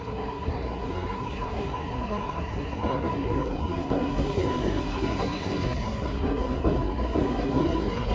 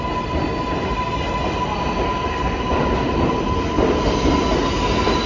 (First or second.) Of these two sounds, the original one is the second